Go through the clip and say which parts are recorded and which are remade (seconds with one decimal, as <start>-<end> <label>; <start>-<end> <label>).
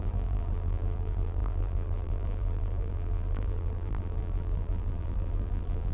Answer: 0.0-5.9 remade